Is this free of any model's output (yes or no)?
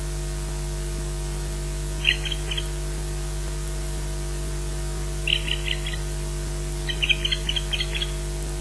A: yes